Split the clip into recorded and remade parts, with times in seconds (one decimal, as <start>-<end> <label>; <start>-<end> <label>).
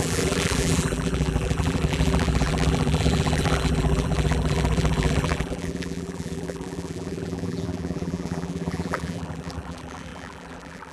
0.0-10.9 remade